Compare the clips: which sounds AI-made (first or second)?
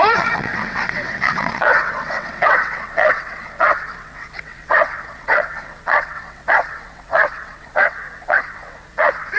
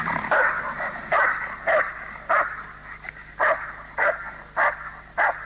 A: first